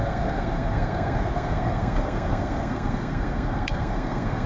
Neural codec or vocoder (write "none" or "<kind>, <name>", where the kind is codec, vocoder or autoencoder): codec, SNAC